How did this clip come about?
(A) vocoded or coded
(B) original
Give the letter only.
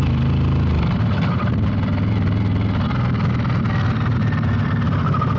B